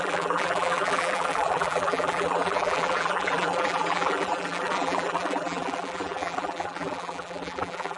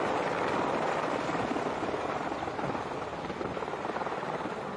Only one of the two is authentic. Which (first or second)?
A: second